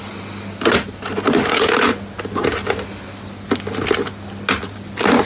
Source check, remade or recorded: recorded